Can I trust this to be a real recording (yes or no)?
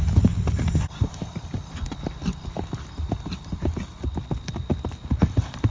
no